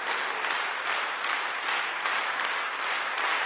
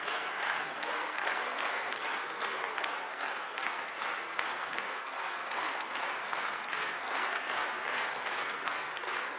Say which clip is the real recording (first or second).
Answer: first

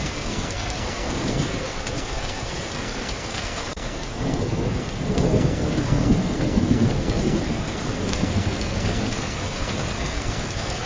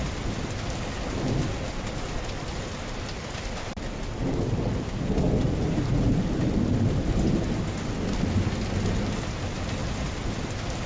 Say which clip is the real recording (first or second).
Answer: second